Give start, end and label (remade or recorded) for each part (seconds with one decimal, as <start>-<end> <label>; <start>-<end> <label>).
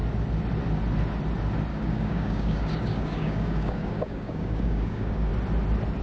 0.0-1.7 recorded; 1.7-5.3 remade; 5.3-6.0 recorded